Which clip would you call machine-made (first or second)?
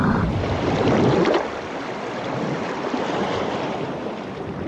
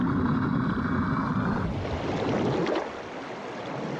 first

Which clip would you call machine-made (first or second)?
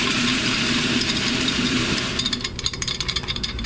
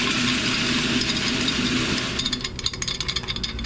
first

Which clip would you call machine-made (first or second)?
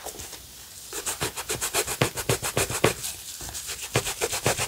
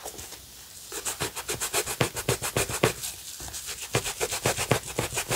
first